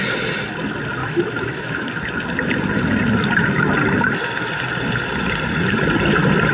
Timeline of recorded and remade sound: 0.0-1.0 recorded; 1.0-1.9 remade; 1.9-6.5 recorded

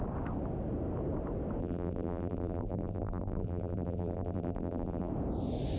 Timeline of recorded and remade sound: 0.0-1.6 recorded; 1.6-5.1 remade; 5.1-5.8 recorded

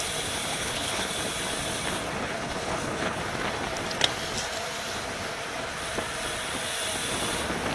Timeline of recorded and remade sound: 0.0-0.5 recorded; 0.5-1.1 remade; 1.1-2.2 recorded; 2.2-3.2 remade; 3.2-7.7 recorded

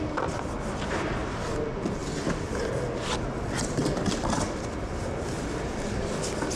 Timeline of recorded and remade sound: 0.0-6.6 recorded